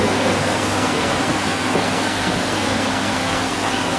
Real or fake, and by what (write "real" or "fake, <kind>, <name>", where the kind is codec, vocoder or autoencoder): fake, codec, SNAC